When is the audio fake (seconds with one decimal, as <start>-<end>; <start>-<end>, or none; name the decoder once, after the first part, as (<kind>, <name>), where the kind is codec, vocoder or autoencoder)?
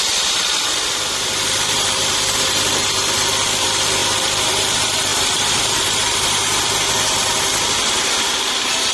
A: 5.1-6.2 (vocoder, BigVGAN v2)